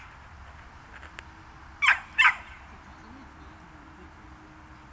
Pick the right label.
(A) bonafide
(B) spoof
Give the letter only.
A